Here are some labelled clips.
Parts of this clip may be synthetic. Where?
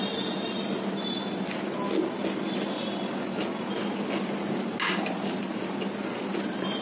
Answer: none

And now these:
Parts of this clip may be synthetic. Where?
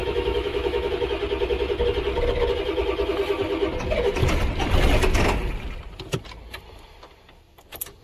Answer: 0.0-0.9 (autoencoder, DAC-VAE)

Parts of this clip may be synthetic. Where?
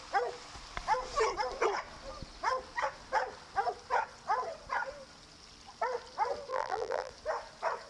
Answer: 6.5-7.1 (vocoder, BigVGAN v2)